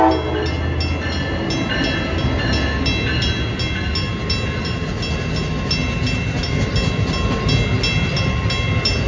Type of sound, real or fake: real